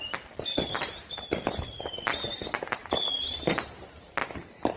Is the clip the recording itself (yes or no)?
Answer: yes